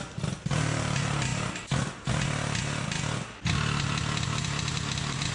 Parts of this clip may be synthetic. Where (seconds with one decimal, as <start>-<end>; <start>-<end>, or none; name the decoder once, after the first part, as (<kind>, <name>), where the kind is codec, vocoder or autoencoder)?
none